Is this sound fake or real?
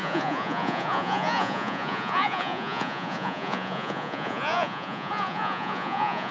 fake